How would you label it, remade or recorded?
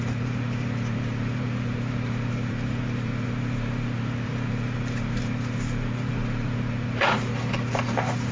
remade